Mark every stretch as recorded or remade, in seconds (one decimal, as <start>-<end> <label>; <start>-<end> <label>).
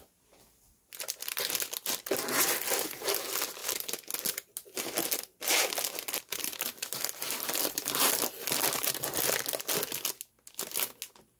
0.0-11.4 recorded